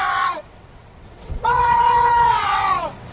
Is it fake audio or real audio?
fake